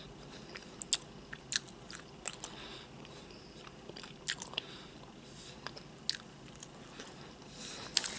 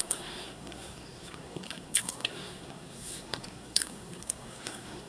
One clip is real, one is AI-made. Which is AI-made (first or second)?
second